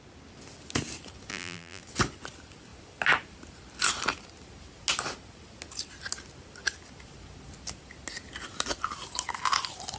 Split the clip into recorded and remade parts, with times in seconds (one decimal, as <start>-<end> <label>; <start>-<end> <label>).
0.0-1.3 recorded; 1.3-1.8 remade; 1.8-10.0 recorded

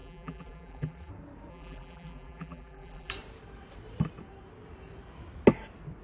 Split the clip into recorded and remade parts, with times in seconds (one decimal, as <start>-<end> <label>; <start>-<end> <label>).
0.0-1.1 remade; 1.1-1.5 recorded; 1.5-3.1 remade; 3.1-6.0 recorded

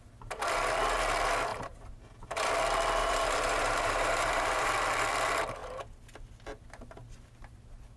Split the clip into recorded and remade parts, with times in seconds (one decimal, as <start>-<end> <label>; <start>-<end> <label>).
0.0-1.5 recorded; 1.5-2.5 remade; 2.5-3.0 recorded; 3.0-4.7 remade; 4.7-8.0 recorded

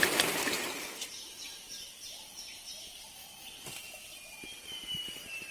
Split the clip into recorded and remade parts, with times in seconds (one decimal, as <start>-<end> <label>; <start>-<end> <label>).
0.0-3.2 remade; 3.2-4.2 recorded; 4.2-5.5 remade

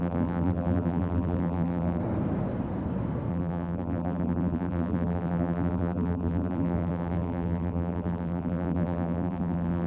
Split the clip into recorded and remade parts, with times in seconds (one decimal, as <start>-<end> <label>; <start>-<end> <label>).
0.0-2.0 remade; 2.0-3.3 recorded; 3.3-9.9 remade